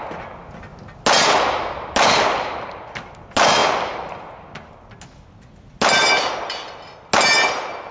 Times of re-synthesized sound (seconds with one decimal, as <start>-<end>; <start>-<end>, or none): none